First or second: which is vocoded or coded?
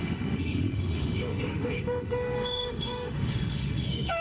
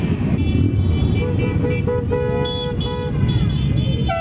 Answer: first